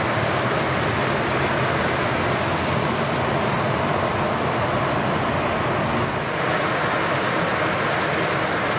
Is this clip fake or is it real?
real